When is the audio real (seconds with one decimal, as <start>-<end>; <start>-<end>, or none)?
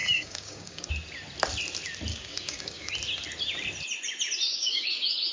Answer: 0.9-2.1; 2.9-4.5